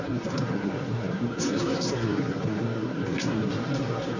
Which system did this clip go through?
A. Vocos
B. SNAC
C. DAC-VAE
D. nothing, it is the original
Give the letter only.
B